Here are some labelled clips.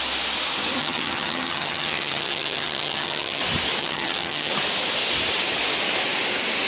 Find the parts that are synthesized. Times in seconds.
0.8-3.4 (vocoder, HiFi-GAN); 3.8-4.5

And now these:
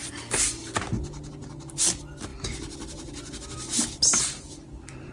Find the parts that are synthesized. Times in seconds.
none

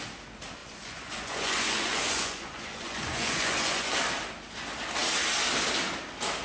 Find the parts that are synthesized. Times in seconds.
0.6-3.9 (vocoder, Vocos)

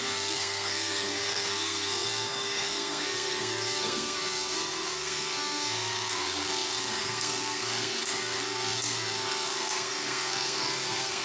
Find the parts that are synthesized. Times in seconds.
0.0-11.2 (codec, SNAC)

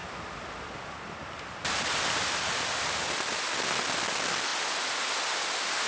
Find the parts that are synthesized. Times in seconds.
none

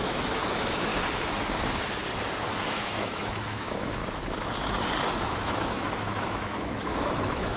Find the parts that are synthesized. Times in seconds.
0.0-0.9 (autoencoder, DAC-VAE); 2.6-4.0; 5.2-7.6